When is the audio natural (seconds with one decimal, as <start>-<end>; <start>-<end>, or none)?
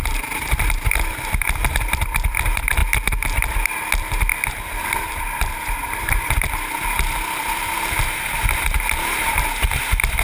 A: 2.8-4.6